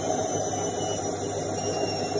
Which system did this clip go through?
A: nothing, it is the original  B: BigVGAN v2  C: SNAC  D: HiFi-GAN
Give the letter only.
A